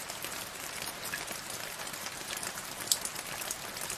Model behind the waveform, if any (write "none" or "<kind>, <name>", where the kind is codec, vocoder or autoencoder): vocoder, BigVGAN v2